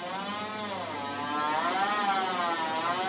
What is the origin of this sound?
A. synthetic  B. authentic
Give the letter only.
B